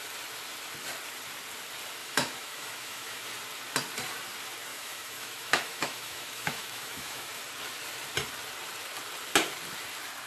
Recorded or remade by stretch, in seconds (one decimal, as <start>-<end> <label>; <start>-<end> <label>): 0.0-2.0 recorded; 2.0-3.2 remade; 3.2-4.7 recorded; 4.7-7.4 remade; 7.4-10.3 recorded